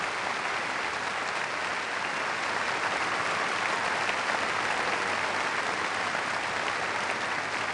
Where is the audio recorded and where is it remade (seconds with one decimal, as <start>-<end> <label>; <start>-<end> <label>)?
0.0-7.7 recorded